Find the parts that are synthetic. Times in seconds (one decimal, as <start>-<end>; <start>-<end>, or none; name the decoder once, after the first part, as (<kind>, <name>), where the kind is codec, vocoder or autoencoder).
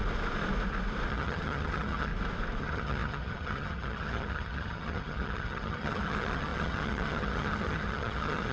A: 1.1-2.1 (vocoder, HiFi-GAN); 2.6-8.5